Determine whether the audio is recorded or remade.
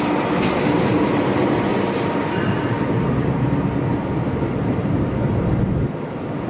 recorded